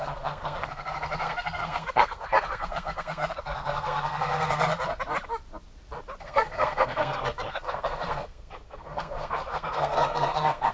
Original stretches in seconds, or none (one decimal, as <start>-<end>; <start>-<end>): 4.7-6.2